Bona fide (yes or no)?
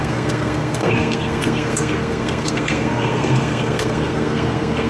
no